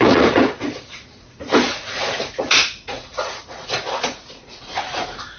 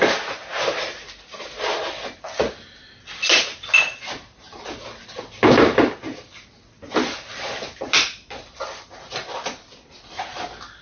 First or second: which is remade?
first